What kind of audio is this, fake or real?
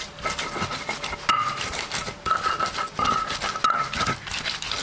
real